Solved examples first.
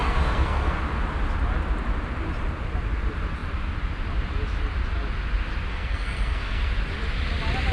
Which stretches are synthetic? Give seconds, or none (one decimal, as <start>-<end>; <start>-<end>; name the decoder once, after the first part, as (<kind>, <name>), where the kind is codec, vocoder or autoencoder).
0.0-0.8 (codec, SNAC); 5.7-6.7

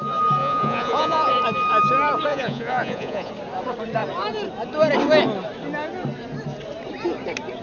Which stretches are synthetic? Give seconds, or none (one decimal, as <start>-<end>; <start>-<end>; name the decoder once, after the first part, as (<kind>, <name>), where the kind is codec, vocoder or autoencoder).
0.4-1.3 (vocoder, Vocos); 2.3-3.3

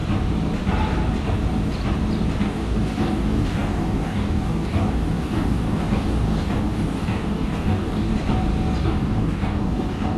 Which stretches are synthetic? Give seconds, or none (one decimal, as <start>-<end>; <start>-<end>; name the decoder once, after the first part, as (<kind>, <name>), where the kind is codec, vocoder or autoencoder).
2.4-8.1 (codec, DAC); 8.8-10.2

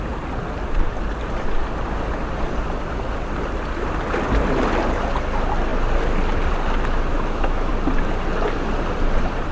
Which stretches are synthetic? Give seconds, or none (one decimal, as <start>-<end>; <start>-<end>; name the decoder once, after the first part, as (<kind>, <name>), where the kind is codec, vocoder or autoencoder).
7.1-7.7 (autoencoder, DAC-VAE)